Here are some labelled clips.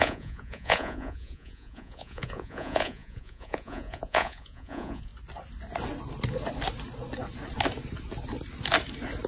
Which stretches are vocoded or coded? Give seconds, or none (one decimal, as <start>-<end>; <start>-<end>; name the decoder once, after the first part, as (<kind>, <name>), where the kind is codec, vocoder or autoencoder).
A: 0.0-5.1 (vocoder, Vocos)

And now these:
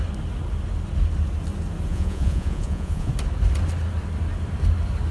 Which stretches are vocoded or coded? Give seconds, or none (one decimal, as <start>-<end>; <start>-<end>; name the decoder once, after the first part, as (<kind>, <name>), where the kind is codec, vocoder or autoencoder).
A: 1.9-3.1 (vocoder, Vocos)

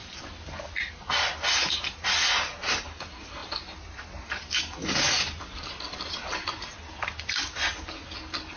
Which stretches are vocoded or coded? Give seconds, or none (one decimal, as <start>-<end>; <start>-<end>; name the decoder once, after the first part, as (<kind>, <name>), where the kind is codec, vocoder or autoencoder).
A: none

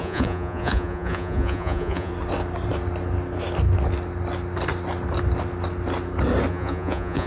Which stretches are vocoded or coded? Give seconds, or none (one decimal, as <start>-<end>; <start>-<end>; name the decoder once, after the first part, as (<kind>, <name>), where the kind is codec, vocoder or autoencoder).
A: 0.0-2.1 (vocoder, Vocos); 6.5-7.3

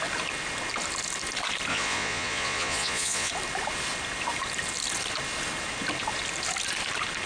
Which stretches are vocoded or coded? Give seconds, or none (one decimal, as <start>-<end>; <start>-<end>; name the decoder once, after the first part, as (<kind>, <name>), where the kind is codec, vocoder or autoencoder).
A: 1.7-3.3 (vocoder, Vocos)